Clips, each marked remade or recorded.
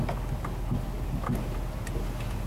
recorded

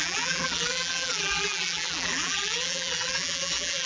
remade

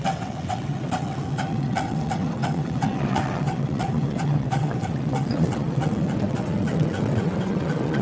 remade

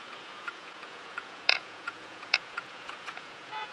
remade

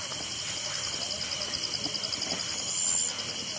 recorded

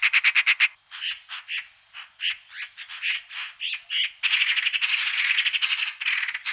recorded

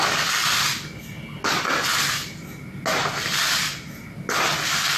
recorded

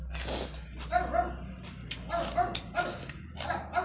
recorded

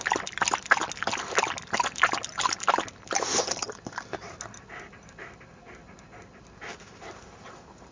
recorded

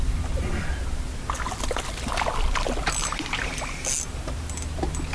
recorded